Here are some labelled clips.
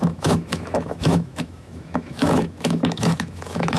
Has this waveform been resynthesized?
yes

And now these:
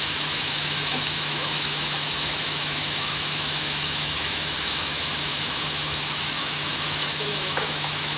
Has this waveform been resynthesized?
yes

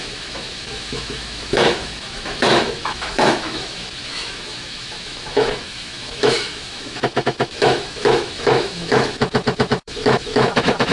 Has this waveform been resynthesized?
yes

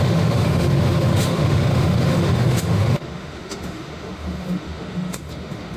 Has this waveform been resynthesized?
yes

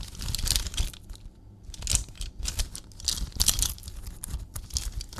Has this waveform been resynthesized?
no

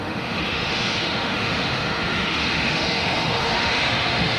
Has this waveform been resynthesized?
yes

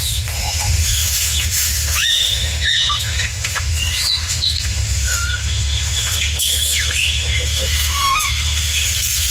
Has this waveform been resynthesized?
yes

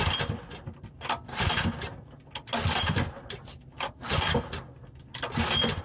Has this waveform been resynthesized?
no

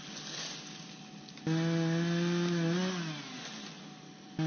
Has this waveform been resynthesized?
no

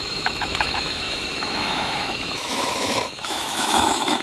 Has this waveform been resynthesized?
yes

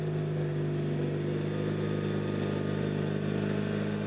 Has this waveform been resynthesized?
no